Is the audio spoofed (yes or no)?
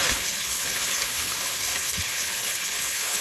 yes